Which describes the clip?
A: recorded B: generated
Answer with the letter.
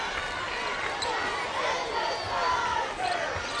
A